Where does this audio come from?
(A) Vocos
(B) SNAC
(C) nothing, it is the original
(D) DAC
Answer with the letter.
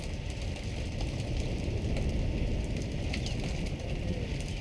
C